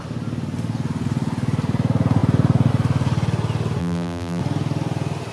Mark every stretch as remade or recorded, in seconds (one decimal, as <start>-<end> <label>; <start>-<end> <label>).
0.0-3.8 recorded; 3.8-4.4 remade; 4.4-5.3 recorded